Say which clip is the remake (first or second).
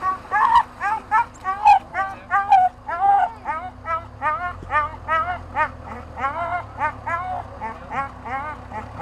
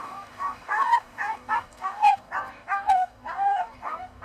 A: second